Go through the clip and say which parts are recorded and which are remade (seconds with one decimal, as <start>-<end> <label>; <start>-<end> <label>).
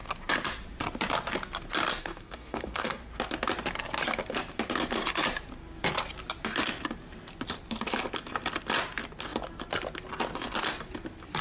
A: 0.0-2.0 recorded; 2.0-3.0 remade; 3.0-11.4 recorded